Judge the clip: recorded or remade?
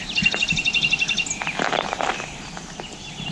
recorded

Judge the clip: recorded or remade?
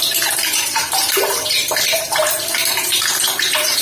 remade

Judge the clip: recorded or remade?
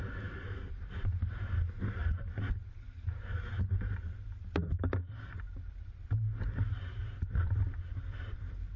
recorded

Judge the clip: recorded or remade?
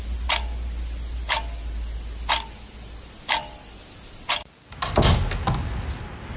recorded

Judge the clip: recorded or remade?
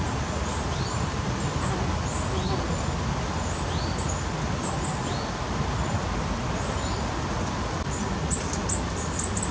recorded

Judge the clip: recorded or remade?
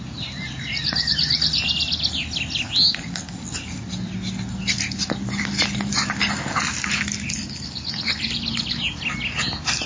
recorded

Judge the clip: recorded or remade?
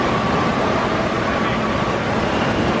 recorded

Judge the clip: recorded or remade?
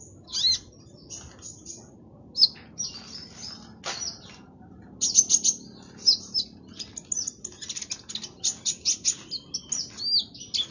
recorded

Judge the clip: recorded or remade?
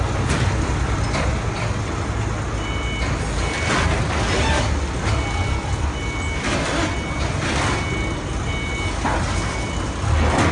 recorded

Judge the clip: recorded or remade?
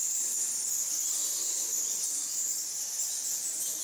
remade